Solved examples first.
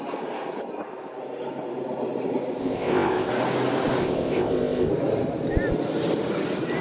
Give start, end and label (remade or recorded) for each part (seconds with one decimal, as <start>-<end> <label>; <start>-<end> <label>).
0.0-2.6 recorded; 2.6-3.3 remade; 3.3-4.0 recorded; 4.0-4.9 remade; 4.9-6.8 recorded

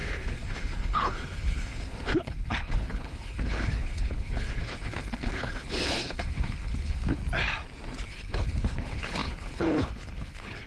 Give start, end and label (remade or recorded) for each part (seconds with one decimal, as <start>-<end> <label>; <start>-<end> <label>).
0.0-7.2 remade; 7.2-8.1 recorded; 8.1-10.7 remade

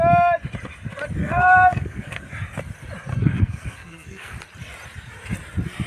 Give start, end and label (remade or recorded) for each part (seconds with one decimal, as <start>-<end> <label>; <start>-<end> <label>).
0.0-1.2 recorded; 1.2-2.2 remade; 2.2-3.1 recorded; 3.1-4.4 remade; 4.4-5.9 recorded

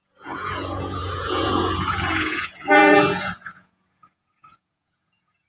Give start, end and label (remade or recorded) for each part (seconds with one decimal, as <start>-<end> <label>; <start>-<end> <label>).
0.0-5.5 remade

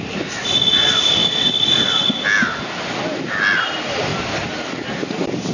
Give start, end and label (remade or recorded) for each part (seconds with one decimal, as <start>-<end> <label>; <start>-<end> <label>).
0.0-4.1 recorded; 4.1-5.5 remade

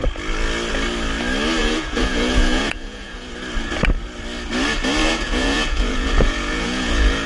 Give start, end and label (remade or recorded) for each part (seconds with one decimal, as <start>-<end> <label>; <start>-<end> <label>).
0.0-1.6 recorded; 1.6-3.3 remade; 3.3-5.0 recorded; 5.0-7.3 remade

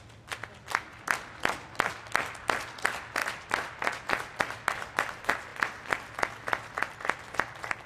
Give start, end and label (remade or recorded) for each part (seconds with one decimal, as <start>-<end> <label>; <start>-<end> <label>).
0.0-7.9 recorded